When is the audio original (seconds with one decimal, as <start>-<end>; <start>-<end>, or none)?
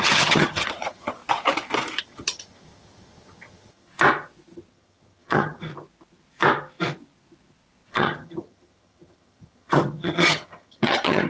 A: 1.2-2.0; 3.9-4.7; 5.7-7.9